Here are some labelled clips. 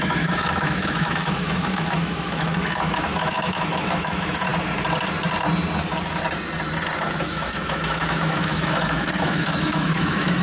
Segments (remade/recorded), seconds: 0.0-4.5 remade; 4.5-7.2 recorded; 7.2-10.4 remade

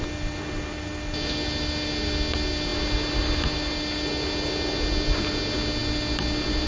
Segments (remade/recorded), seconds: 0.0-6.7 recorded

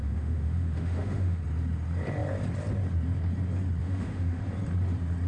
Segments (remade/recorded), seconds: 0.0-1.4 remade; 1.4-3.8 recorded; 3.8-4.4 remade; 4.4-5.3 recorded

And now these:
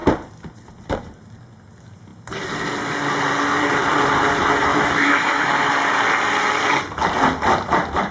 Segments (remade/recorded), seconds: 0.0-4.7 recorded; 4.7-5.5 remade; 5.5-8.1 recorded

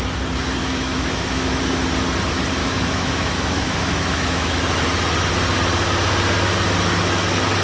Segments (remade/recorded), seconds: 0.0-0.6 recorded; 0.6-1.6 remade; 1.6-2.6 recorded; 2.6-4.6 remade; 4.6-7.6 recorded